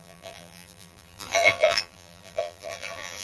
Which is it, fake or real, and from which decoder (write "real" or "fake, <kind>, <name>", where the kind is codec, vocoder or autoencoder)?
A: fake, vocoder, BigVGAN v2